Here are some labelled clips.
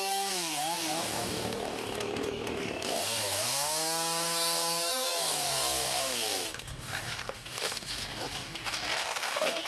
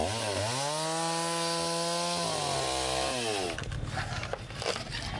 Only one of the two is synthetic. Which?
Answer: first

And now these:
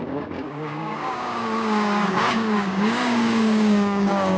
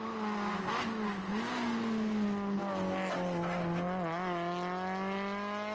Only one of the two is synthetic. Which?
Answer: first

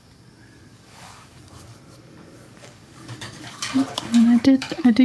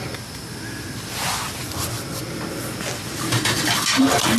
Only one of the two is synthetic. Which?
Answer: first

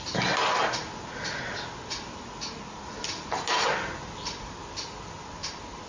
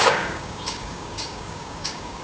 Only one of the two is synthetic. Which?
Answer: second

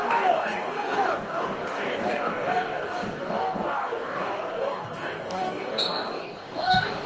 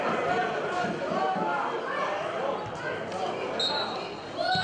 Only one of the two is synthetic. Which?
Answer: first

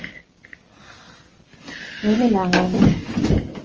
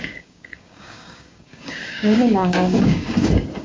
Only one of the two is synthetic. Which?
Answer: second